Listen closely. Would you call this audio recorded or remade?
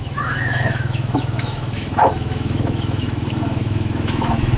remade